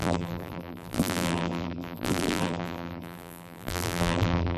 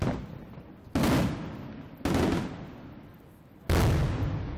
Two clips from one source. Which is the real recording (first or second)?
second